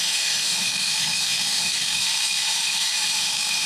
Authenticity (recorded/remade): remade